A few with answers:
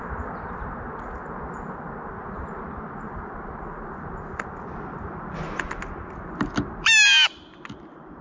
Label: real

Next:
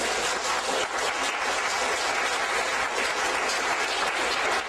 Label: real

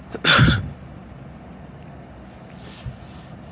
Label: real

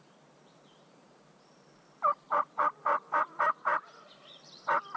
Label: fake